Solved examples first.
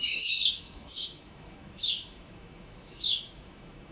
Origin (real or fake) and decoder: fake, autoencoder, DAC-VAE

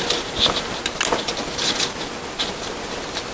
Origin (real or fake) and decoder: real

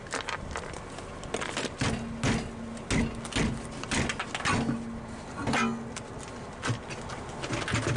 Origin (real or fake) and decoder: real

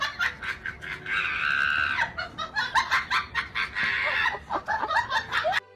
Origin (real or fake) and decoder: real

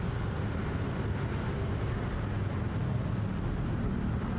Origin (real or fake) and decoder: real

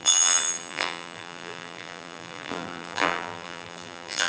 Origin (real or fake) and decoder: fake, vocoder, BigVGAN v2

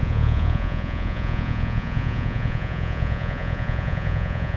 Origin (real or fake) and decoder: fake, vocoder, Vocos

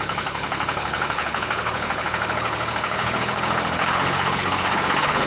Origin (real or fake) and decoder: fake, codec, HILCodec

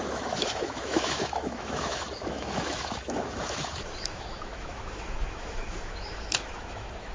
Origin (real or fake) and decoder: fake, autoencoder, DAC-VAE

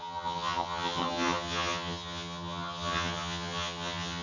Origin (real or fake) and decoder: fake, vocoder, HiFi-GAN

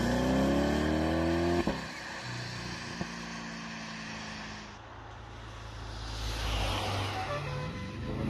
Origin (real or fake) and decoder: real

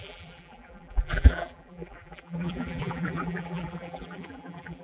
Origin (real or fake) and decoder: fake, vocoder, BigVGAN v2